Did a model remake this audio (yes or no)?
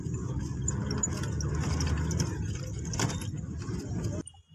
no